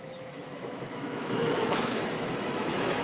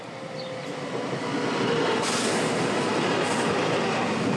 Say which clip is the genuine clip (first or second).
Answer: second